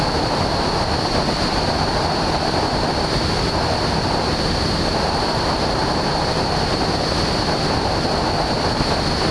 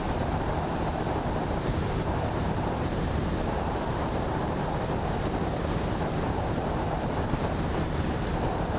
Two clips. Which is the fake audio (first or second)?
second